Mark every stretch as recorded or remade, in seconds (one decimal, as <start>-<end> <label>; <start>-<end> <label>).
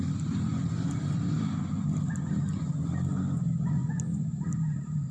0.0-5.1 recorded